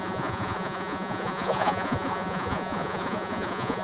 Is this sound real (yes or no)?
no